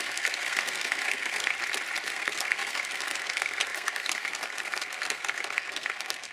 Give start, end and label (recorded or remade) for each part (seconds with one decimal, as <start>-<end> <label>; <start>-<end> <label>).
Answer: 0.0-1.5 remade; 1.5-2.1 recorded; 2.1-6.3 remade